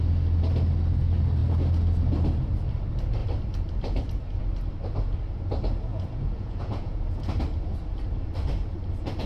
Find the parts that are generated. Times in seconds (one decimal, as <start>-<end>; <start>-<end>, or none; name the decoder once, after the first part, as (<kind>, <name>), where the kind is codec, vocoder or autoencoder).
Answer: 5.9-7.3 (vocoder, Vocos)